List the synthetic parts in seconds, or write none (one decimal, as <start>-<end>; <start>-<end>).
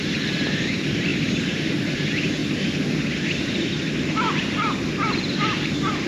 0.0-2.4; 3.4-6.1